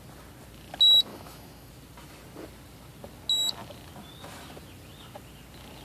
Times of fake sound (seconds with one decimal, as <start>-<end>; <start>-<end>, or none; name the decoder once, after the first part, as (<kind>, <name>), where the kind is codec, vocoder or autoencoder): 1.1-1.7 (autoencoder, DAC-VAE)